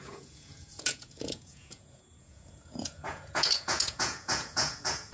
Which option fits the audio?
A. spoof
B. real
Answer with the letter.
A